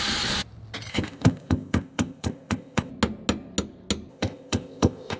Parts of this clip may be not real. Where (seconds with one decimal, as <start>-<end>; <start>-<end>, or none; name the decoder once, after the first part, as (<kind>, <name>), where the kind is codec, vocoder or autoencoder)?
0.9-2.9 (codec, ZipCodec); 4.1-5.2